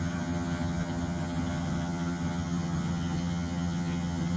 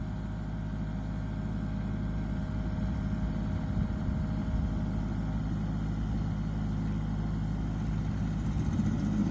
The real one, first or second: second